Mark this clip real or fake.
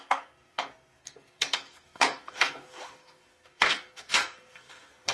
fake